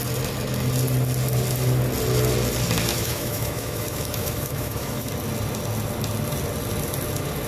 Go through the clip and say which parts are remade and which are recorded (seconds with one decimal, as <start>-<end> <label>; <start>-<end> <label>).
0.0-2.9 recorded; 2.9-5.1 remade; 5.1-7.5 recorded